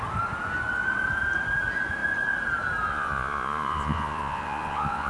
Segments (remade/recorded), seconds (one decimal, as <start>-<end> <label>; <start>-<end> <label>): 0.0-2.9 recorded; 2.9-5.1 remade